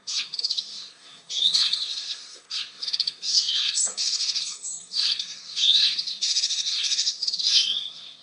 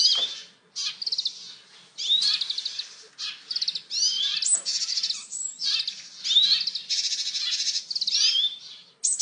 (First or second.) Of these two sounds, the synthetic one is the first